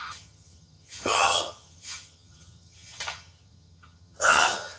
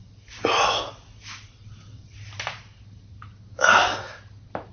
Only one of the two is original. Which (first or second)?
second